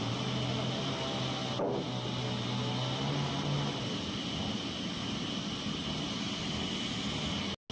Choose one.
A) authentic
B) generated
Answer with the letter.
A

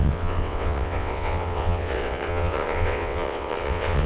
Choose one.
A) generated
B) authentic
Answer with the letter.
A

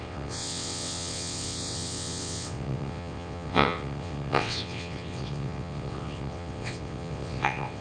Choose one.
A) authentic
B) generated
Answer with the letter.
B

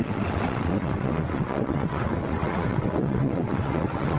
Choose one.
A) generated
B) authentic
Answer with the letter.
A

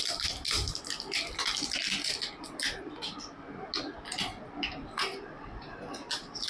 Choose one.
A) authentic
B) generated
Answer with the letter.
A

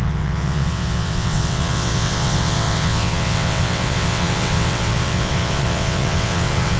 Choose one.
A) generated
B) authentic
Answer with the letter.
A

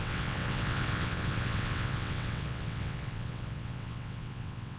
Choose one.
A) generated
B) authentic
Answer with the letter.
A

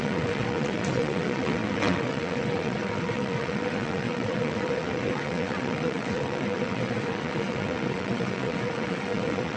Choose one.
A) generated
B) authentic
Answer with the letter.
A